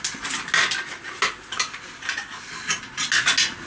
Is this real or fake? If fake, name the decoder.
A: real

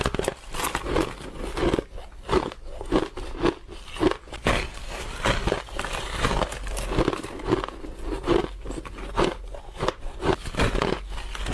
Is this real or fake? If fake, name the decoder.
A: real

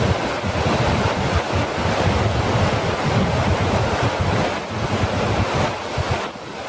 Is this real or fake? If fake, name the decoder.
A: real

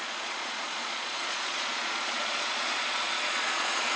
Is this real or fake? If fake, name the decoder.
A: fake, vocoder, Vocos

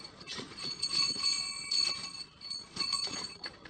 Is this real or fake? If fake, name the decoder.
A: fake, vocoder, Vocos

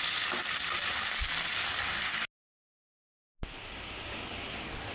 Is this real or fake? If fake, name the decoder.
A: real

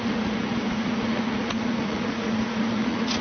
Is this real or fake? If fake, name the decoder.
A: fake, vocoder, Vocos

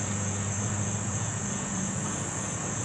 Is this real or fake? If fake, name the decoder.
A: fake, vocoder, Vocos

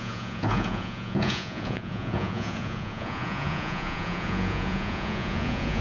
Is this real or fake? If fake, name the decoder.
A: fake, vocoder, Vocos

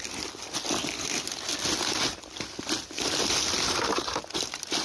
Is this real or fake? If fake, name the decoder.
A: real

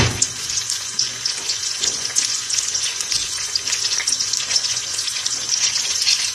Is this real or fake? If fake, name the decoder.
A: fake, vocoder, Vocos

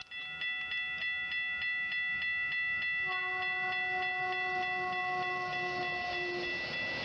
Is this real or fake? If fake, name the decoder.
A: real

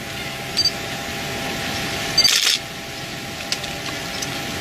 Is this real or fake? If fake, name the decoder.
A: real